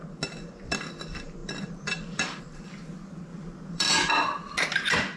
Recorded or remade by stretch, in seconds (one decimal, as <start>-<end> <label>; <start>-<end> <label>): 0.0-1.4 recorded; 1.4-2.4 remade; 2.4-3.3 recorded; 3.3-4.1 remade; 4.1-5.2 recorded

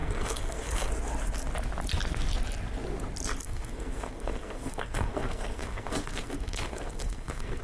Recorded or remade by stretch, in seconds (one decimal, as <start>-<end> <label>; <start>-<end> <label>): 0.0-0.9 remade; 0.9-3.4 recorded; 3.4-7.6 remade

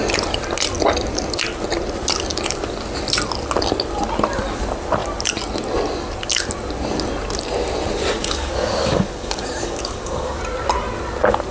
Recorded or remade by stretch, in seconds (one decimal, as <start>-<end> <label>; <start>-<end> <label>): 0.0-8.2 recorded; 8.2-10.4 remade; 10.4-11.5 recorded

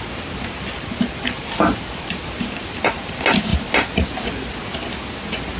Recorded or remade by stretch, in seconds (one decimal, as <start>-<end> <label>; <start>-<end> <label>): 0.0-5.6 recorded

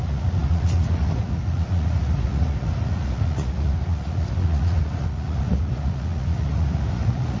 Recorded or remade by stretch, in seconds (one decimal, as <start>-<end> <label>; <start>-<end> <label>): 0.0-7.4 remade